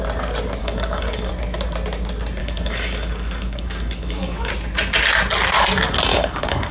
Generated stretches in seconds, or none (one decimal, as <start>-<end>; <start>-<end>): 0.6-1.3; 2.4-4.5; 6.1-6.7